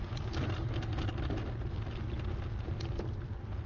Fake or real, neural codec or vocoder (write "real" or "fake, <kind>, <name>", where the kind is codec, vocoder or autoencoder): real